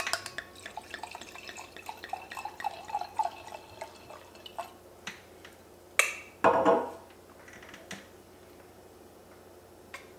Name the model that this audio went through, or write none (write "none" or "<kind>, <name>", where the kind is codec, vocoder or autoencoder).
none